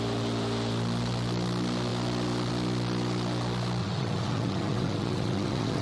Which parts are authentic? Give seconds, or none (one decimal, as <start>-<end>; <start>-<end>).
0.0-3.8